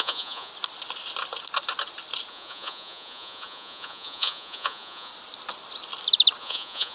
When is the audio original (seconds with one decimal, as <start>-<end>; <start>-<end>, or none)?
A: 0.5-2.3; 5.1-6.4